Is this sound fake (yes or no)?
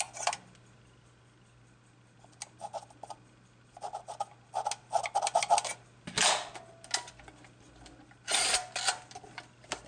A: no